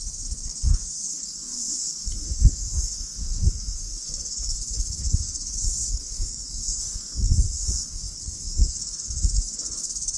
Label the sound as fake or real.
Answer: fake